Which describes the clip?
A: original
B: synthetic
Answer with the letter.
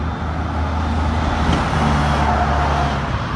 A